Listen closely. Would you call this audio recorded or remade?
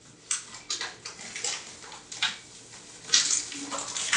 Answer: recorded